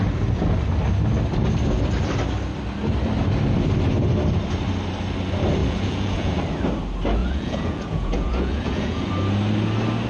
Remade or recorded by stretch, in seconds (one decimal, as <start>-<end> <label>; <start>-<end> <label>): 0.0-5.6 recorded; 5.6-6.4 remade; 6.4-7.2 recorded; 7.2-9.1 remade; 9.1-10.1 recorded

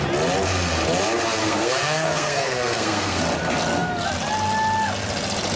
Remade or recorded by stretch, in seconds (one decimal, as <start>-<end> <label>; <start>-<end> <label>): 0.0-1.4 recorded; 1.4-3.2 remade; 3.2-5.6 recorded